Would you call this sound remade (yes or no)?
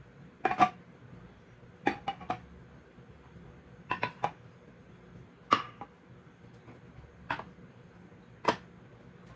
no